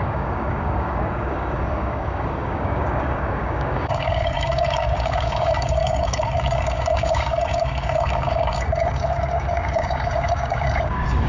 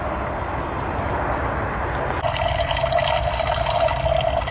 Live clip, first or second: second